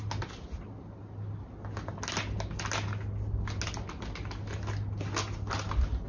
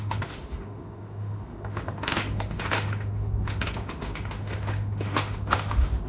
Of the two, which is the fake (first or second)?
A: second